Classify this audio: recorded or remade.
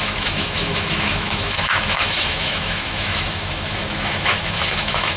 remade